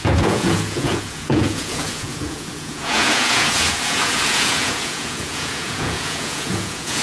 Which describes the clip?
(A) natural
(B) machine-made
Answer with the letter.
B